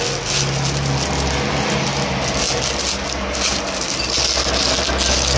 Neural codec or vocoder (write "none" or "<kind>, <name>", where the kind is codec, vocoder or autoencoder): none